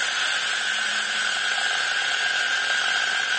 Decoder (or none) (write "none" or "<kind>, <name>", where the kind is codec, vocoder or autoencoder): none